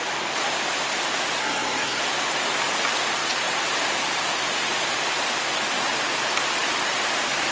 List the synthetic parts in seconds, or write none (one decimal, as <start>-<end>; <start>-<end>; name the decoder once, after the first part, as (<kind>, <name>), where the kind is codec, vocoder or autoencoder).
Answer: 1.4-2.0 (codec, SNAC)